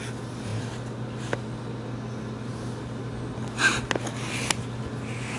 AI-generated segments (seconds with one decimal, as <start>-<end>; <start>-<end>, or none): none